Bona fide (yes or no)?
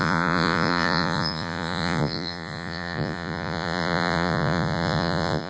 no